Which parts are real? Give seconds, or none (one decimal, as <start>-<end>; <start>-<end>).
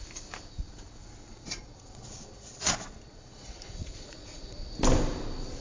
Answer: 0.0-1.3; 4.7-5.6